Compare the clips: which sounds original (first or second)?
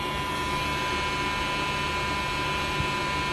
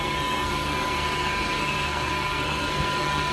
first